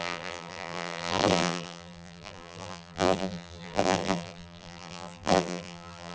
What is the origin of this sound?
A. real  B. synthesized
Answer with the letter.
B